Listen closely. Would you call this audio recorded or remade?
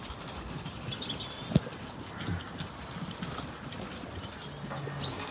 recorded